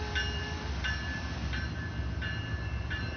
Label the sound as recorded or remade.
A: recorded